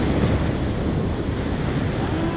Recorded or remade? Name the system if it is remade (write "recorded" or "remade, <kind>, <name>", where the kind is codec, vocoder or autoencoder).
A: recorded